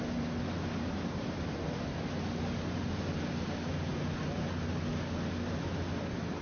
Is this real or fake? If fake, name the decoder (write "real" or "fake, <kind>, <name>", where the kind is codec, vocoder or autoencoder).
real